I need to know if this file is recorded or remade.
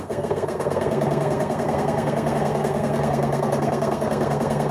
remade